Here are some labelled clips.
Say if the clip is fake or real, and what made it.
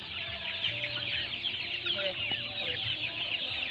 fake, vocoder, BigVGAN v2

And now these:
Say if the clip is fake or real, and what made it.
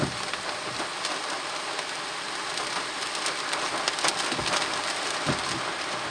real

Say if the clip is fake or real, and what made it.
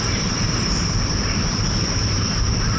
fake, vocoder, BigVGAN v2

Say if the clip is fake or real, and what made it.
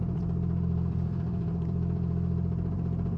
fake, vocoder, BigVGAN v2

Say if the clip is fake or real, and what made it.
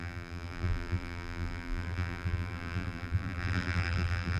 fake, vocoder, BigVGAN v2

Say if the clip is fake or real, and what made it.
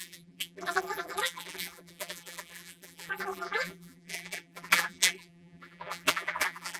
fake, vocoder, BigVGAN v2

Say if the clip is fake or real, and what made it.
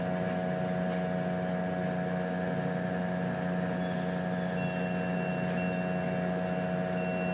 real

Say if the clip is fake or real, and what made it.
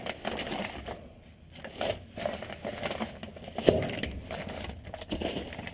real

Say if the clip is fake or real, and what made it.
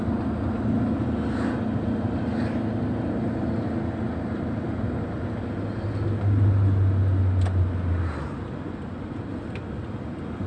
real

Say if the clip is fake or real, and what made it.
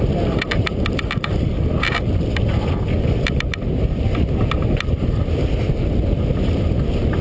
fake, vocoder, BigVGAN v2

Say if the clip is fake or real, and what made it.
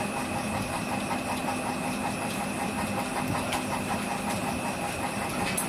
real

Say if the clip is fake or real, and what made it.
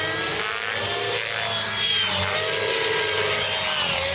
real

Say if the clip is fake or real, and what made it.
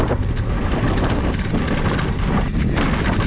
real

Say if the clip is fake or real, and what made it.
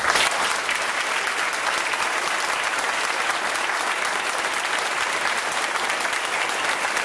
real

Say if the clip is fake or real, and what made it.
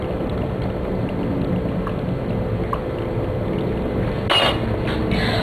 real